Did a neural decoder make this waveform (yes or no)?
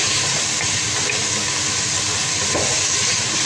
no